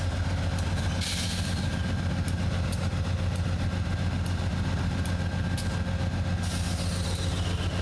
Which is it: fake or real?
real